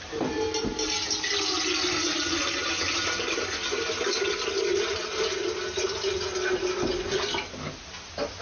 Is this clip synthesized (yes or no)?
no